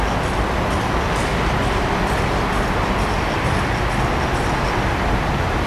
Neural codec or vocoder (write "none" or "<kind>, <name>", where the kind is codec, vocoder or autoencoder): none